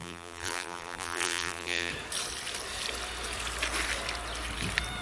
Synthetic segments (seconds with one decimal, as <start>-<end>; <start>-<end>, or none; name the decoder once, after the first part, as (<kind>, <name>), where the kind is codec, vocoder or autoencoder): 0.0-1.9 (vocoder, BigVGAN v2)

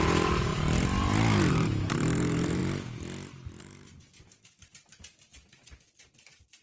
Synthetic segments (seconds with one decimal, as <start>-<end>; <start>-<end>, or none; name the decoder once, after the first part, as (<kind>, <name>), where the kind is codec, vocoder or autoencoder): 0.0-0.5 (vocoder, BigVGAN v2); 1.5-2.6; 3.6-6.6

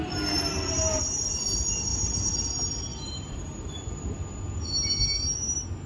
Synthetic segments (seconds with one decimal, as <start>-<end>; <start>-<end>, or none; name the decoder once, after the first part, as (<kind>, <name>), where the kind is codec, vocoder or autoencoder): 1.9-2.5 (vocoder, BigVGAN v2); 2.9-3.7

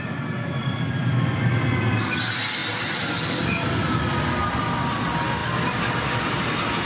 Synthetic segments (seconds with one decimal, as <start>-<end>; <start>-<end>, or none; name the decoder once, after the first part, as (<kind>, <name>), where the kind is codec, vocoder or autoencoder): none

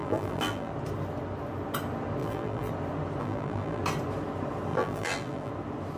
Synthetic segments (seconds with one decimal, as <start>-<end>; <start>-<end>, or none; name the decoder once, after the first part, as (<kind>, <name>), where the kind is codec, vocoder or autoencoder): 0.0-0.7 (vocoder, BigVGAN v2); 2.2-2.7; 3.2-3.8; 4.7-5.5

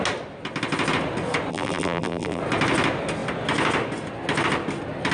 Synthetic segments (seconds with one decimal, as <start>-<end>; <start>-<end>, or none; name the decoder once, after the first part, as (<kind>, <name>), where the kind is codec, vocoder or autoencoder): 1.5-2.4 (vocoder, BigVGAN v2)

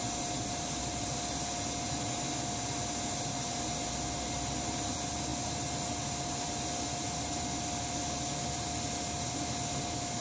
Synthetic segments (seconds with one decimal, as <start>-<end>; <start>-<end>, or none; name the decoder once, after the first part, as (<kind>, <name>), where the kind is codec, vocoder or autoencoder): none